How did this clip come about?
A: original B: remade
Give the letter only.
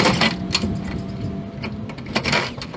A